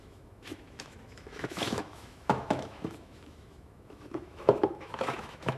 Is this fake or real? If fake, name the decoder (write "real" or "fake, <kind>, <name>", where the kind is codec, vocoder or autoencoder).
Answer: fake, autoencoder, DAC-VAE